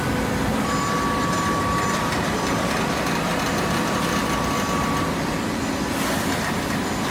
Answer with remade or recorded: recorded